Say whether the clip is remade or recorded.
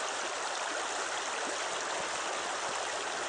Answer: recorded